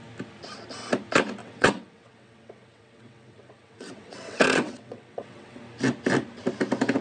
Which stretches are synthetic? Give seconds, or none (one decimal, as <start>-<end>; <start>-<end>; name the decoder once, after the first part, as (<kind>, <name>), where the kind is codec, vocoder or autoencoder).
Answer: 1.4-5.6 (vocoder, WaveNeXt)